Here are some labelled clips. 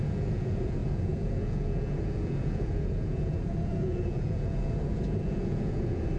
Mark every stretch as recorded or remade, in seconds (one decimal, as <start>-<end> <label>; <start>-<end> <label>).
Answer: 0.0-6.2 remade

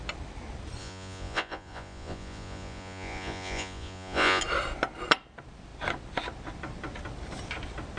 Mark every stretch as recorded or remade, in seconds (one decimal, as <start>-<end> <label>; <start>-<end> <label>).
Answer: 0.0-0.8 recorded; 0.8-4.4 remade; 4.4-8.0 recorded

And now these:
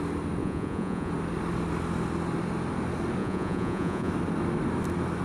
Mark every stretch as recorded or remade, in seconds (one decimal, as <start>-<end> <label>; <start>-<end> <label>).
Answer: 0.0-0.4 recorded; 0.4-1.1 remade; 1.1-3.2 recorded; 3.2-4.1 remade; 4.1-5.2 recorded

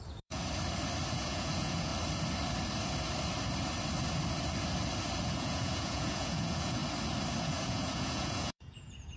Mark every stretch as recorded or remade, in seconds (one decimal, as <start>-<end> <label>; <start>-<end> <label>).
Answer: 0.0-0.4 remade; 0.4-1.1 recorded; 1.1-1.9 remade; 1.9-5.2 recorded; 5.2-6.8 remade; 6.8-7.4 recorded; 7.4-9.2 remade

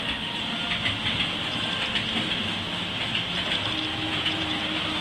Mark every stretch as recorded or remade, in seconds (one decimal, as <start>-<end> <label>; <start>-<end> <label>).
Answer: 0.0-4.1 recorded; 4.1-4.6 remade; 4.6-5.0 recorded

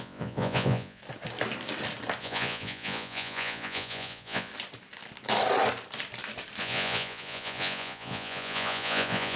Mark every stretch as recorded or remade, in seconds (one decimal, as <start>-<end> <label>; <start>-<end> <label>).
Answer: 0.0-1.0 remade; 1.0-2.2 recorded; 2.2-4.5 remade; 4.5-6.6 recorded; 6.6-9.4 remade

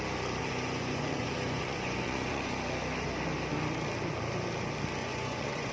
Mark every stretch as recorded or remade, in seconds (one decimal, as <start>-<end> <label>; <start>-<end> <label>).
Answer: 0.0-0.4 recorded; 0.4-2.5 remade; 2.5-5.0 recorded; 5.0-5.7 remade

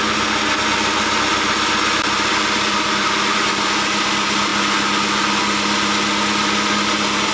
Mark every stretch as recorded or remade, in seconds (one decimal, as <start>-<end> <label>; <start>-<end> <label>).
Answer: 0.0-7.3 recorded